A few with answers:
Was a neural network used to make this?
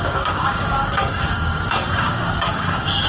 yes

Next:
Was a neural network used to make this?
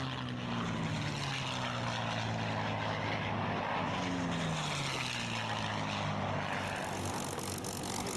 no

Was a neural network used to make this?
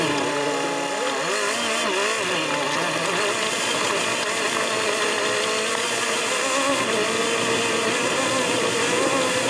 no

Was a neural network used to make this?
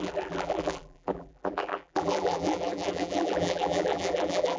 yes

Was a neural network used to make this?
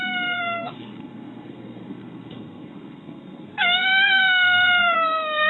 yes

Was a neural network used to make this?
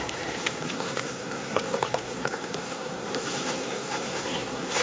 yes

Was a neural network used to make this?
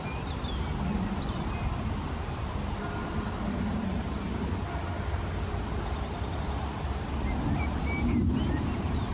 no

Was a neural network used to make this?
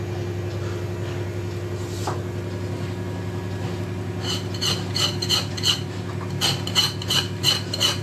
no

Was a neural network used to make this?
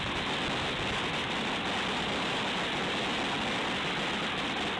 no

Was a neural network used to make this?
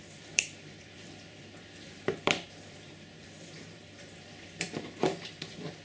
yes